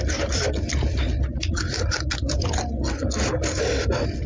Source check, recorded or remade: recorded